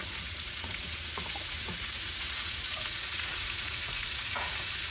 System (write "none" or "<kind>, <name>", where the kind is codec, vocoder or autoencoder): vocoder, Vocos